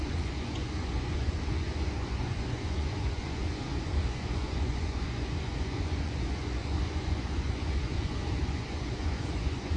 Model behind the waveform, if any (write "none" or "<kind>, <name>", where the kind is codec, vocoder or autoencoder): vocoder, Vocos